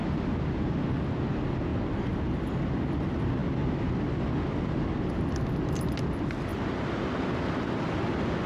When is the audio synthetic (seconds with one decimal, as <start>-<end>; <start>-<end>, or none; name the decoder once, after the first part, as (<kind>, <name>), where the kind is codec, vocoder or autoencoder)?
6.5-7.3 (vocoder, BigVGAN v2)